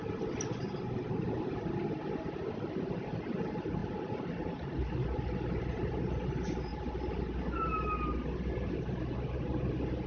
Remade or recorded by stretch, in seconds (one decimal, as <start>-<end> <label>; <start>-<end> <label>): 0.0-10.1 recorded